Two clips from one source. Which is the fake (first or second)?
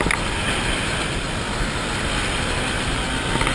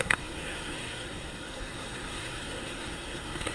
second